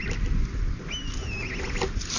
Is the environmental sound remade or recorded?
recorded